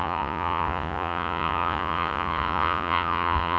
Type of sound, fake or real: fake